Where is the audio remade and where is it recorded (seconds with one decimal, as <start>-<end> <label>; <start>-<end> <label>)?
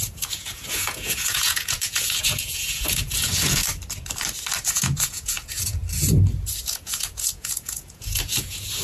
0.0-3.6 remade; 3.6-4.7 recorded; 4.7-5.8 remade; 5.8-6.6 recorded; 6.6-8.8 remade